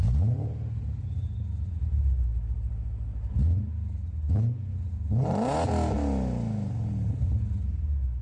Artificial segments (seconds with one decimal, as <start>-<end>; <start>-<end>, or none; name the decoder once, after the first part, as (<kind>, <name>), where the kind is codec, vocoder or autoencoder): none